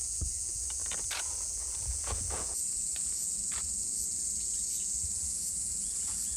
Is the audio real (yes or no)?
no